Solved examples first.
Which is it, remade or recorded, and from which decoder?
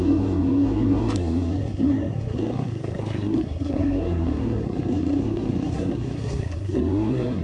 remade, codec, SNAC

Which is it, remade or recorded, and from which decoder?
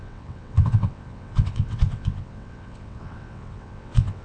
remade, vocoder, WaveNeXt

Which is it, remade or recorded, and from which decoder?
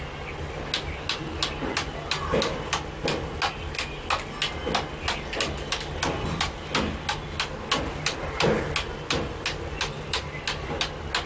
recorded